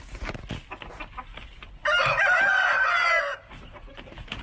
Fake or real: real